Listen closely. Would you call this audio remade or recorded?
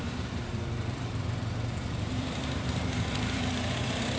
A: remade